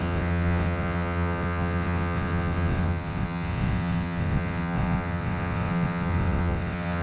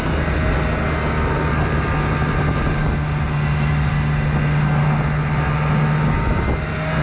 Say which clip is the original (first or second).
second